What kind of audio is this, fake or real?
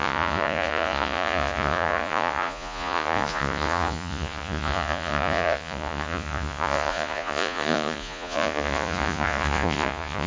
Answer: fake